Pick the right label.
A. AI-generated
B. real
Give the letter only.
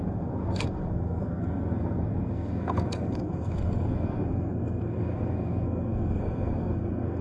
A